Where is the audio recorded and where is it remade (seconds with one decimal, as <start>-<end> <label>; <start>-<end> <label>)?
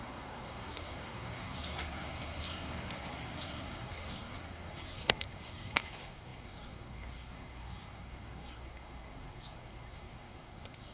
0.0-10.9 remade